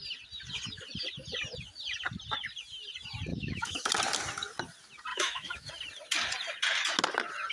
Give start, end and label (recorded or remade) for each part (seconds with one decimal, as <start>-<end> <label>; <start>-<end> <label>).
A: 0.0-3.3 recorded; 3.3-3.9 remade; 3.9-5.1 recorded; 5.1-5.7 remade; 5.7-7.5 recorded